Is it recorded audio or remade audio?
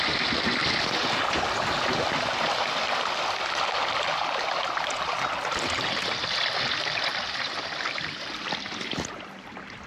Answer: remade